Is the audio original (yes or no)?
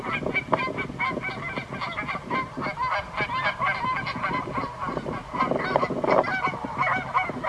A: yes